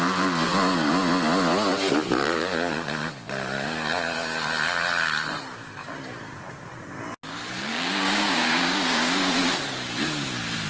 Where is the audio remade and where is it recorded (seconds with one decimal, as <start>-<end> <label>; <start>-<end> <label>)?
0.0-7.7 recorded; 7.7-9.3 remade; 9.3-10.7 recorded